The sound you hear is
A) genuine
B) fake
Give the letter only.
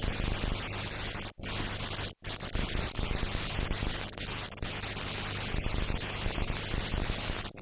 A